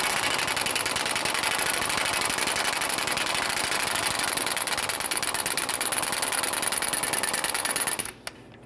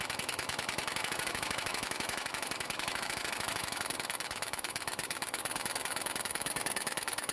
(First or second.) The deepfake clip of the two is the second